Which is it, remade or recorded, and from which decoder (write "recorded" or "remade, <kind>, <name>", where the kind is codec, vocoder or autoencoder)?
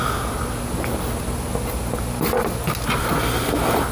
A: recorded